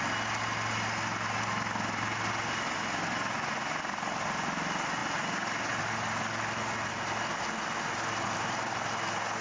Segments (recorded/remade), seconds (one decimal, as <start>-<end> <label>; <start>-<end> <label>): 0.0-9.4 recorded